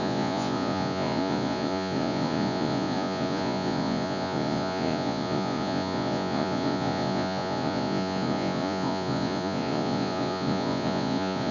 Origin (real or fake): fake